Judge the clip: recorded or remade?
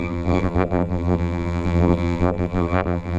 remade